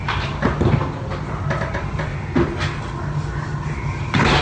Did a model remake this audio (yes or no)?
no